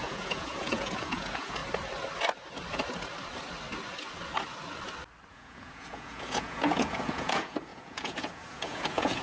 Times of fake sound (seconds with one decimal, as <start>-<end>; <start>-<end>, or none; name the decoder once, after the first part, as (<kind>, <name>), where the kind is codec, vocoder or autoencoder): 0.0-1.6 (vocoder, Vocos); 5.3-9.2